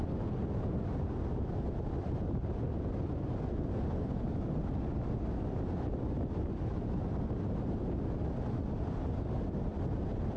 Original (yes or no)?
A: yes